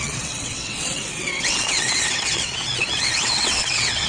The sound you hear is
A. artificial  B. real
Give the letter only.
A